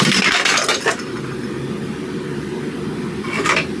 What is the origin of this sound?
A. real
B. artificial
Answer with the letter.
A